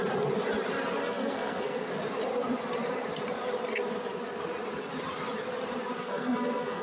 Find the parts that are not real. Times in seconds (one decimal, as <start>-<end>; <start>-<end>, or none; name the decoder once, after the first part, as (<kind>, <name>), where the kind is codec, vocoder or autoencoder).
1.0-1.9 (codec, SNAC); 6.0-6.8